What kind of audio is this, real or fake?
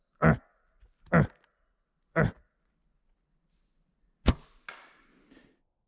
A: real